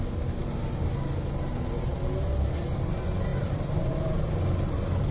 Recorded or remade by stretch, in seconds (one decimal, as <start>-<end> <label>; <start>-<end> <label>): 0.0-5.1 recorded